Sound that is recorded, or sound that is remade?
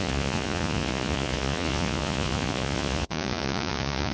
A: remade